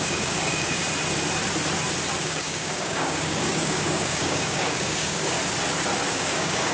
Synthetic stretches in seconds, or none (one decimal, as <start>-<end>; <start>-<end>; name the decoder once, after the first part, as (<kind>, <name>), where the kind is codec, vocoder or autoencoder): 0.0-0.8 (codec, DAC); 2.2-5.4; 6.1-6.7